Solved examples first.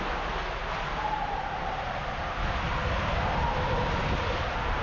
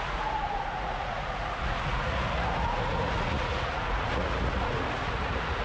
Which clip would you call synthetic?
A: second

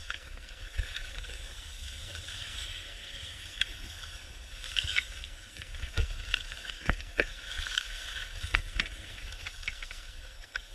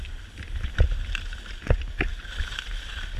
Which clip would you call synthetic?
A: first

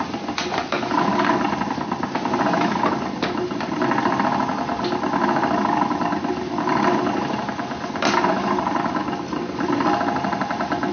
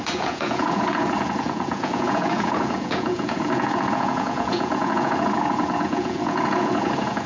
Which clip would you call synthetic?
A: second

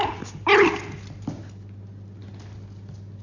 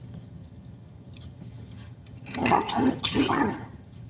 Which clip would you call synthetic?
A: second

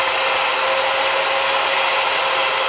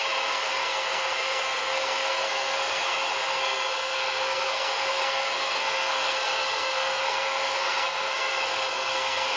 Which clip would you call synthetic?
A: second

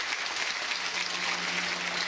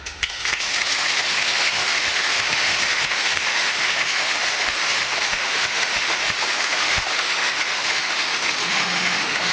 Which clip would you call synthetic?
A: second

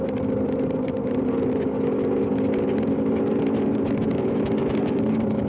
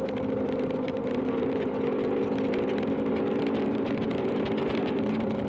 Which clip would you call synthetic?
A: second